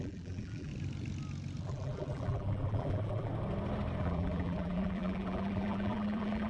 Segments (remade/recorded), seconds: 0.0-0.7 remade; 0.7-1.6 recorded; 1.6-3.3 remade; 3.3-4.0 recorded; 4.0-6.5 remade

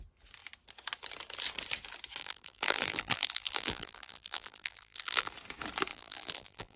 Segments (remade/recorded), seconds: 0.0-2.2 recorded; 2.2-5.3 remade; 5.3-5.9 recorded; 5.9-6.8 remade

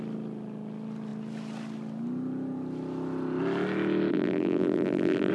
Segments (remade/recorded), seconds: 0.0-4.1 recorded; 4.1-5.3 remade

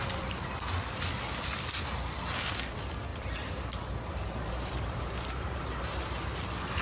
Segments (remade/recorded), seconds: 0.0-3.1 recorded; 3.1-6.0 remade; 6.0-6.8 recorded